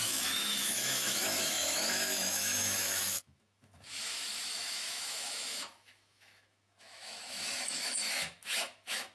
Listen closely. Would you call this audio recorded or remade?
remade